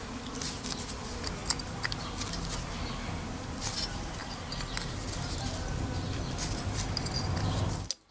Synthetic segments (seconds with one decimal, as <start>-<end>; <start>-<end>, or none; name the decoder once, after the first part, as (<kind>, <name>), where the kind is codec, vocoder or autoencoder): none